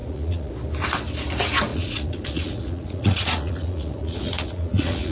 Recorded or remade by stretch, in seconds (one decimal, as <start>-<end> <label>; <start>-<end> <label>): 0.0-0.5 remade; 0.5-1.7 recorded; 1.7-5.1 remade